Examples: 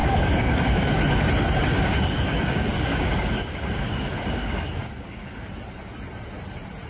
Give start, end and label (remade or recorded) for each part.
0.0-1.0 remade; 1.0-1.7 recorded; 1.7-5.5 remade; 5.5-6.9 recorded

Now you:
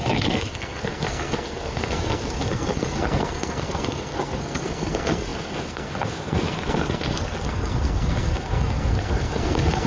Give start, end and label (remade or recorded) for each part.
0.0-9.9 remade

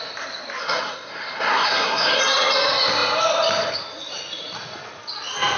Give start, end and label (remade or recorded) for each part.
0.0-0.6 recorded; 0.6-2.2 remade; 2.2-5.6 recorded

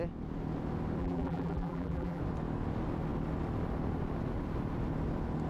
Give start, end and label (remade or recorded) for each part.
0.0-1.0 recorded; 1.0-2.2 remade; 2.2-5.5 recorded